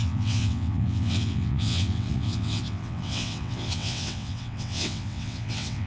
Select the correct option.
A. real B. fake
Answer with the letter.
B